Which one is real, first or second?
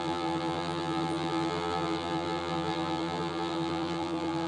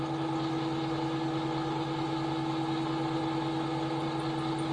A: second